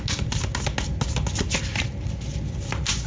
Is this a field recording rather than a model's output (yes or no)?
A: yes